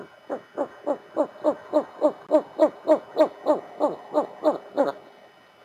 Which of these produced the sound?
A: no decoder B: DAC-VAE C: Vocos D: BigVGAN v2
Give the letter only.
A